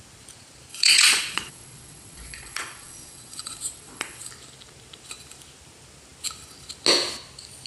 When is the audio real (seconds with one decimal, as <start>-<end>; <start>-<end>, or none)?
0.0-0.7; 4.3-7.7